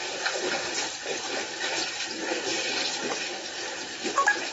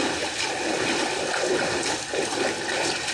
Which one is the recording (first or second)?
second